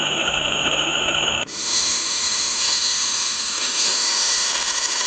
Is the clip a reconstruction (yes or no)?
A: yes